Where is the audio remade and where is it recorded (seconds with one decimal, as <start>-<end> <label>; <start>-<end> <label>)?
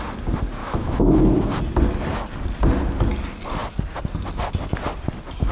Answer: 0.0-0.6 recorded; 0.6-1.4 remade; 1.4-5.5 recorded